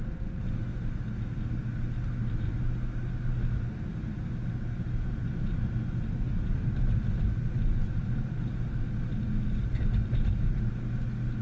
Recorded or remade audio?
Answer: recorded